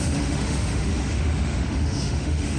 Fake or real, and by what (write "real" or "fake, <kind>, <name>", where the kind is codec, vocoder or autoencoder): fake, autoencoder, DAC-VAE